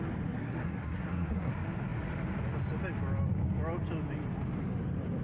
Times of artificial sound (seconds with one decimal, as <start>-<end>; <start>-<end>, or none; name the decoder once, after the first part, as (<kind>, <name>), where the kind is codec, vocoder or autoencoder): 0.4-1.5 (codec, SNAC)